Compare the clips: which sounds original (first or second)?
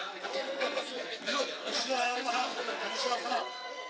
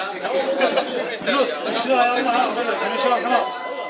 second